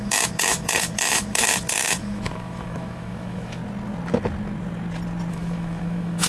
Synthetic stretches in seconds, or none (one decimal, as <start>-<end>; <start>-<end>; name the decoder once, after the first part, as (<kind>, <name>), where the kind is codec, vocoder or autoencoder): 0.0-3.6 (autoencoder, DAC-VAE); 5.3-6.3